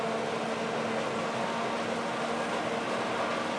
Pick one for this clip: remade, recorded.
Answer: recorded